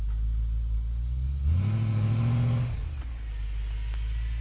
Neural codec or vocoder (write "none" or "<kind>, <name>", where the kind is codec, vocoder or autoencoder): none